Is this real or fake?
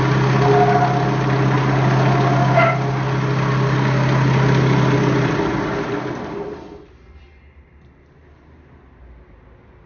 real